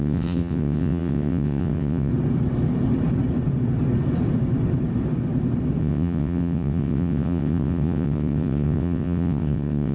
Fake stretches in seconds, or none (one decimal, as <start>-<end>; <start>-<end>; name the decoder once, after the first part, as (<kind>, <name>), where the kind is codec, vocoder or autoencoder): 0.0-2.1 (vocoder, WaveNeXt); 5.8-9.9